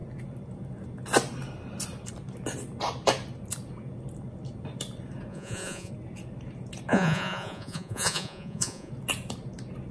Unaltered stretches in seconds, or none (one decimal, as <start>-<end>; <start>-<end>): 0.0-5.3; 5.9-6.9; 8.9-9.9